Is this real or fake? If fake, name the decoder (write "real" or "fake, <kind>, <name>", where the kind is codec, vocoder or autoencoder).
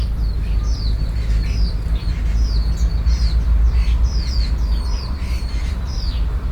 real